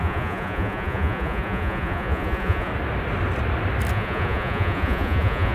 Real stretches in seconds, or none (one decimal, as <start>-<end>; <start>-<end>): 2.7-3.9